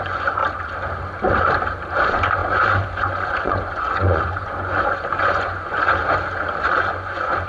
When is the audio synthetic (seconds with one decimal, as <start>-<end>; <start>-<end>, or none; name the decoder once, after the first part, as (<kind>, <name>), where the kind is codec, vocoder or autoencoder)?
0.0-0.4 (vocoder, Vocos); 2.0-6.0; 6.6-7.5